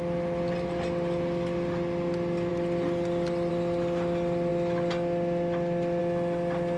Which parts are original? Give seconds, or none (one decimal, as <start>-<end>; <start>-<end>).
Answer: 0.0-6.8

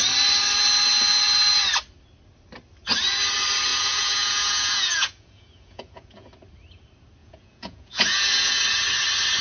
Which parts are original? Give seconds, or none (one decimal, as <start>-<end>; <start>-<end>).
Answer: 0.0-3.7; 6.3-7.2; 8.6-9.4

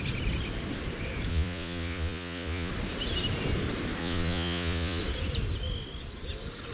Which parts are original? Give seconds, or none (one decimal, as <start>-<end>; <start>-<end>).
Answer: 0.0-1.3; 2.7-4.0; 5.0-6.7

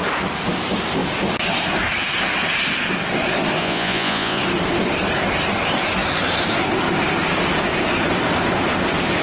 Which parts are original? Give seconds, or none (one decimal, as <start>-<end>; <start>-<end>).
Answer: 0.0-3.6; 4.4-9.2

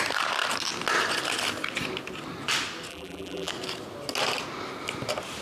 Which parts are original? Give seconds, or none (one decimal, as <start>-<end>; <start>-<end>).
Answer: 0.0-2.9; 3.5-5.4

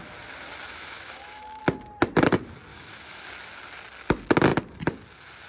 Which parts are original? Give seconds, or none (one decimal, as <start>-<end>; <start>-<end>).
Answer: 0.0-0.7; 1.6-2.7; 3.3-5.5

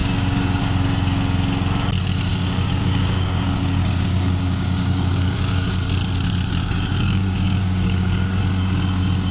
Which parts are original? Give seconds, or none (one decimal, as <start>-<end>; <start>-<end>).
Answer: 0.6-2.3; 5.7-6.6; 8.4-9.3

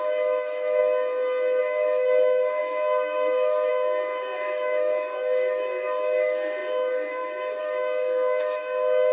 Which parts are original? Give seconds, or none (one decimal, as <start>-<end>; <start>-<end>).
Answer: 0.8-1.6